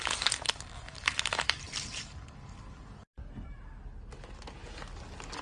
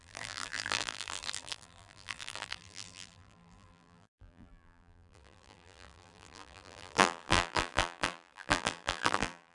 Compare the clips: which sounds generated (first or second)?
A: second